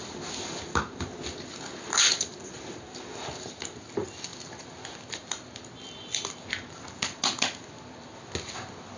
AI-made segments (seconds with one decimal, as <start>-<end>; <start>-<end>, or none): none